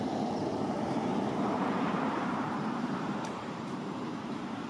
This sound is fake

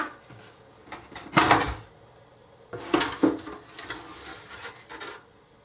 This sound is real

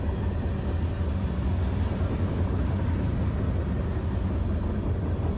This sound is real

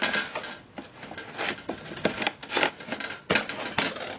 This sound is real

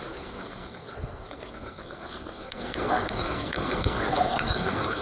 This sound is fake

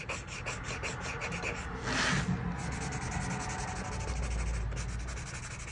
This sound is real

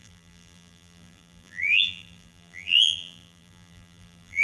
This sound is fake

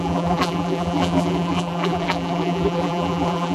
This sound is fake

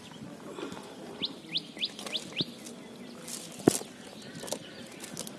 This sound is real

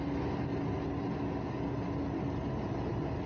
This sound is real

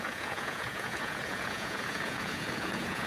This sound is fake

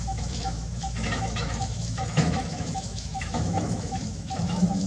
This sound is fake